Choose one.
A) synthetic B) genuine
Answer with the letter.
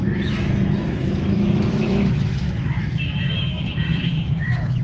A